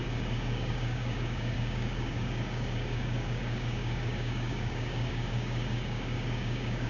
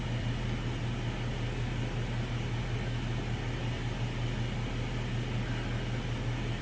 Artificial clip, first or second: first